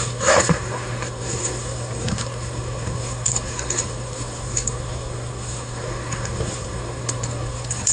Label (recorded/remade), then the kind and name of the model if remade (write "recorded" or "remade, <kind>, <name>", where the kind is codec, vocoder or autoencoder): remade, codec, SNAC